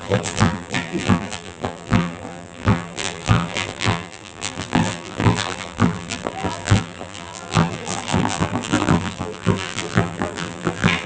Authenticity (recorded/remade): remade